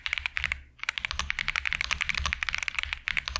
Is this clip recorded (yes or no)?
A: yes